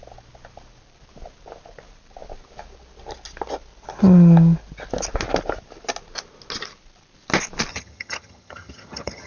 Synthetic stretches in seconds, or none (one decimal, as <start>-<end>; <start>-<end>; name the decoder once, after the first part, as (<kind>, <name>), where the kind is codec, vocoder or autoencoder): 7.7-9.3 (vocoder, HiFi-GAN)